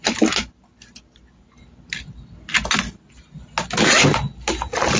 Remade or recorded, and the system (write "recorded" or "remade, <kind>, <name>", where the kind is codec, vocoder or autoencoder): recorded